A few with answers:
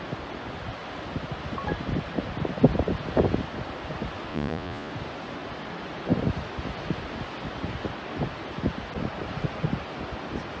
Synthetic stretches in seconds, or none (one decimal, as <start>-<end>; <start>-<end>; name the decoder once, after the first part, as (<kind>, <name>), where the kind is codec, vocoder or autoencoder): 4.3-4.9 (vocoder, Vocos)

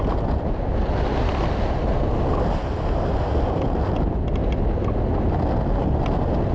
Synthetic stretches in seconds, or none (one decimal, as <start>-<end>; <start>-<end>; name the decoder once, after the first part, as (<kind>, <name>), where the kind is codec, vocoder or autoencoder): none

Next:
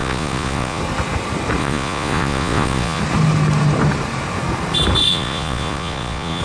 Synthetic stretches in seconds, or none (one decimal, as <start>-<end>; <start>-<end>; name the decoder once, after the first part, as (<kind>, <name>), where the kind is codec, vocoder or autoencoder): 0.0-0.8 (vocoder, Vocos); 1.6-3.0; 5.1-6.4

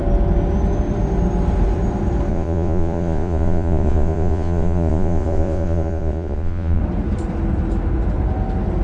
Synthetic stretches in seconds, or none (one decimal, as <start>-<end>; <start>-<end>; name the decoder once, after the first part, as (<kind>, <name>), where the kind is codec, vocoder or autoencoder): 2.3-6.8 (vocoder, Vocos)

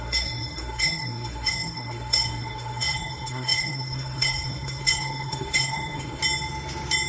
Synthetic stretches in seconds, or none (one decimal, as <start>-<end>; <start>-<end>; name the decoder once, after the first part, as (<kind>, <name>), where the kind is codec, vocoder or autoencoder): 0.0-6.2 (codec, SNAC)